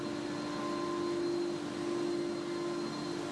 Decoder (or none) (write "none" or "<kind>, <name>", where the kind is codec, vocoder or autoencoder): none